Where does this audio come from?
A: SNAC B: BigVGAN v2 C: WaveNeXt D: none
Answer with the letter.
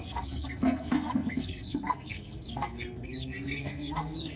A